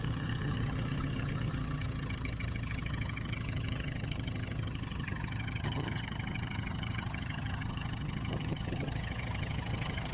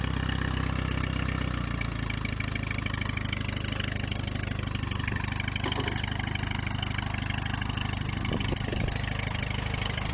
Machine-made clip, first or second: first